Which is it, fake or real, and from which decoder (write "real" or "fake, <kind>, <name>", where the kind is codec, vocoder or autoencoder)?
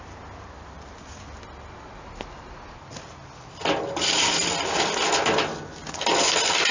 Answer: real